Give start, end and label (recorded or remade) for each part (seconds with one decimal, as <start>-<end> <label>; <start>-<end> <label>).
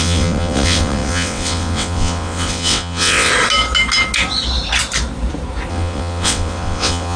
0.0-3.3 remade; 3.3-5.7 recorded; 5.7-7.2 remade